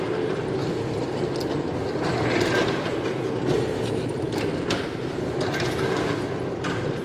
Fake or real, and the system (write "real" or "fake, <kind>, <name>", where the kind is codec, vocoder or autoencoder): real